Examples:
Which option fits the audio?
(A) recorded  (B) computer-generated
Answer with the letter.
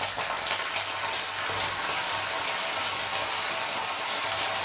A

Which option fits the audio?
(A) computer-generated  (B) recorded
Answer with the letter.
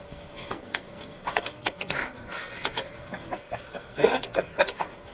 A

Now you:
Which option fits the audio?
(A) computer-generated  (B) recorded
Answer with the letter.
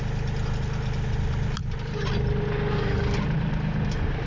B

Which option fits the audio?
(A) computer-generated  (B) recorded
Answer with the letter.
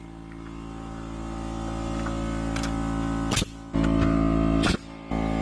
B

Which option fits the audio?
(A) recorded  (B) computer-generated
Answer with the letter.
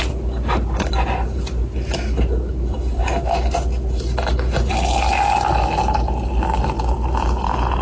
A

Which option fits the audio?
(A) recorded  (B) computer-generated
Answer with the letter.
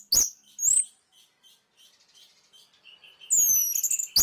A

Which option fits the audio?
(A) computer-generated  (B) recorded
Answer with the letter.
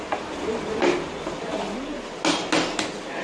B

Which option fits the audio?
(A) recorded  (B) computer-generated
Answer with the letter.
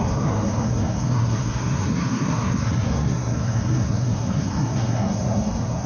B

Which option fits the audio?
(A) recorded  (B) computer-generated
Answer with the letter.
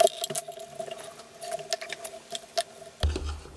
A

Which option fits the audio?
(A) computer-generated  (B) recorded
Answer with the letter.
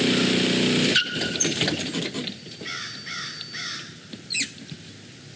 B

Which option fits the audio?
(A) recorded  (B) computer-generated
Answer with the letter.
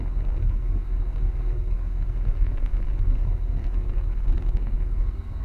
B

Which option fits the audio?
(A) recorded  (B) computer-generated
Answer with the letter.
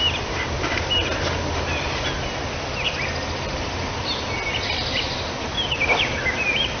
A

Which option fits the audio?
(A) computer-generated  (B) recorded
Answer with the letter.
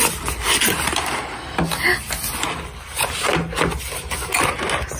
B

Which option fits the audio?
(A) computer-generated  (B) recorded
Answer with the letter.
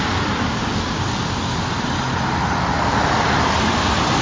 B